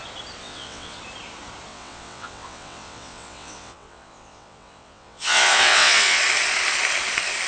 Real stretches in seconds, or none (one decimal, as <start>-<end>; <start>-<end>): 0.0-0.4; 1.0-1.7; 6.2-7.5